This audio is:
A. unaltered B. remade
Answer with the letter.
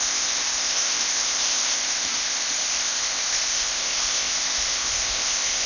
B